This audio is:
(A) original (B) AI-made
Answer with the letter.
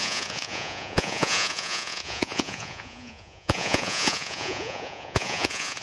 B